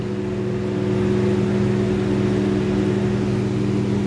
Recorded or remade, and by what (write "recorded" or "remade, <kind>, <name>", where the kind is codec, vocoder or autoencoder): recorded